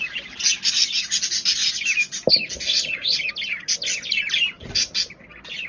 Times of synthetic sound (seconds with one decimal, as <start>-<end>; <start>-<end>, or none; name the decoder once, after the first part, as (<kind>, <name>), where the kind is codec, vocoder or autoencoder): none